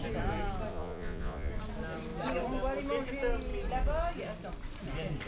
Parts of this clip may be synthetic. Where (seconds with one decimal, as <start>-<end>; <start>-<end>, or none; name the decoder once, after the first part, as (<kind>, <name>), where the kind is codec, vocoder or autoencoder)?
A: 0.7-1.5 (vocoder, Vocos)